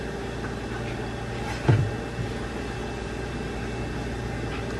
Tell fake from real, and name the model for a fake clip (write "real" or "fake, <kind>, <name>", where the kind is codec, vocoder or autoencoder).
real